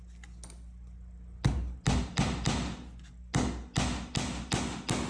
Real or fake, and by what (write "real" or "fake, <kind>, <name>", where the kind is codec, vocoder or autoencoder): real